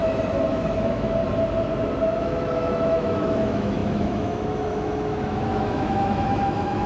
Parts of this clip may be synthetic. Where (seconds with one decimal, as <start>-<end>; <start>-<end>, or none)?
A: 0.5-1.2; 2.2-6.9